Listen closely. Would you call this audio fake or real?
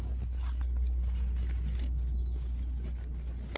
real